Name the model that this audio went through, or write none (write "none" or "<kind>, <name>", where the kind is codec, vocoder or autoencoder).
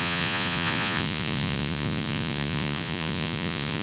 vocoder, Vocos